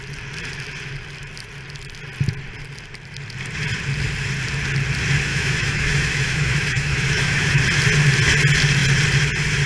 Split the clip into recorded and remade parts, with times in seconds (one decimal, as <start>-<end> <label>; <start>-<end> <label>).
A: 0.0-5.3 recorded; 5.3-7.6 remade; 7.6-9.7 recorded